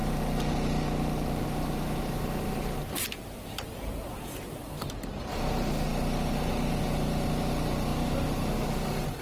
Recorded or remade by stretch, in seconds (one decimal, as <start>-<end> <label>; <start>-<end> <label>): 0.0-9.2 recorded